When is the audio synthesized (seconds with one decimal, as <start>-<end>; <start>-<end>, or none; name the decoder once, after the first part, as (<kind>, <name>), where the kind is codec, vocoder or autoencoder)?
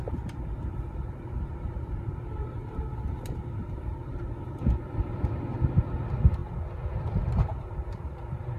0.0-6.4 (vocoder, BigVGAN v2); 7.0-8.6